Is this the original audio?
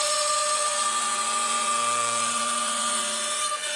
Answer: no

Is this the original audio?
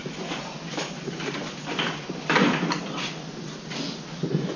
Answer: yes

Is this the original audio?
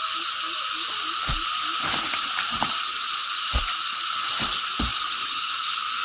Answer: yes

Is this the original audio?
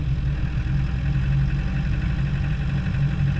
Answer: yes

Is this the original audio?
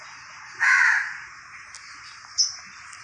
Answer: yes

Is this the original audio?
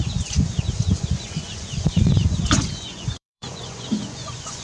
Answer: no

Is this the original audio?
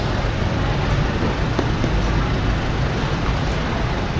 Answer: yes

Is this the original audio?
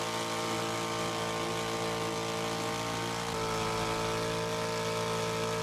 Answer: yes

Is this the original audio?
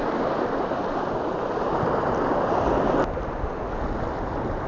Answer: yes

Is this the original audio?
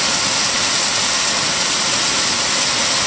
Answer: yes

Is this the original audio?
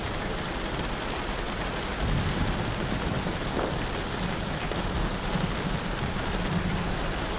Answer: yes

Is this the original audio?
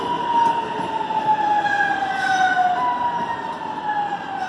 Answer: yes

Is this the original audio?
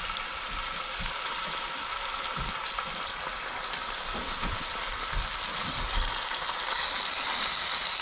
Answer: yes